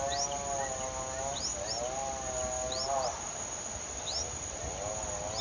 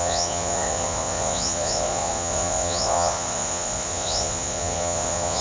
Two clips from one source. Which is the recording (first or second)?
first